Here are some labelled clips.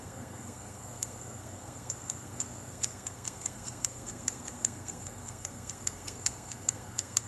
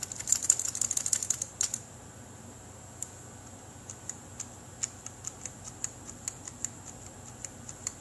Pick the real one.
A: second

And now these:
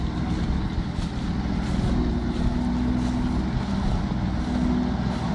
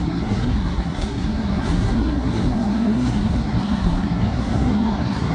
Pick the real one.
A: first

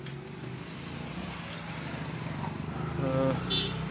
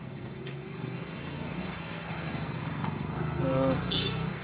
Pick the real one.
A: first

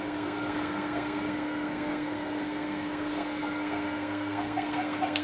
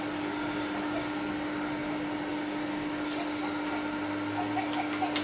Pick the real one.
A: second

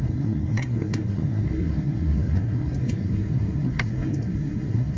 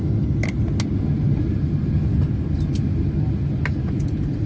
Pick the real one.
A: second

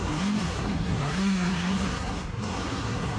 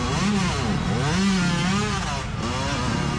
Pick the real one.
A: second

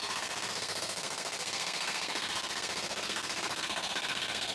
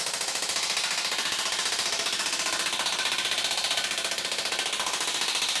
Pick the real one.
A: second